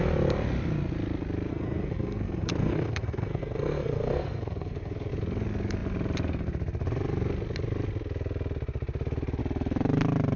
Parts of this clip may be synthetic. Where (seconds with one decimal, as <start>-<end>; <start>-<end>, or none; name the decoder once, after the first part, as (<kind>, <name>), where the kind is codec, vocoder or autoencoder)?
1.5-5.1 (codec, SNAC)